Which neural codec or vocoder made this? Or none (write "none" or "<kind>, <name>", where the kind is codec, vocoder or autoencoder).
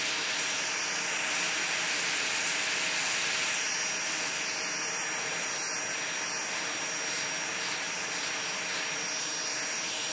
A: none